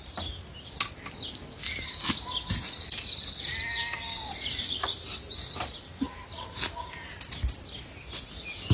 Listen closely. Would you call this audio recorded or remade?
recorded